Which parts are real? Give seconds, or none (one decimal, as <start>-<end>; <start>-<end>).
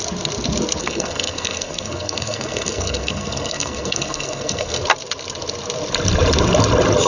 0.0-0.8; 4.8-7.1